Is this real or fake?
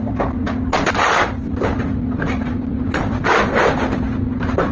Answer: real